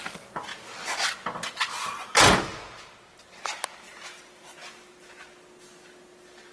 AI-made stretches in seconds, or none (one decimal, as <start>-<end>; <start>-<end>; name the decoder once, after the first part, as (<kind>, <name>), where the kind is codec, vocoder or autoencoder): none